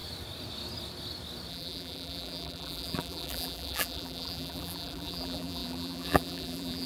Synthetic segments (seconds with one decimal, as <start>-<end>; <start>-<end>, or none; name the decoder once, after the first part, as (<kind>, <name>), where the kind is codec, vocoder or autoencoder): 1.5-6.9 (vocoder, BigVGAN v2)